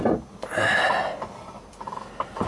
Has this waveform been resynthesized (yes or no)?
no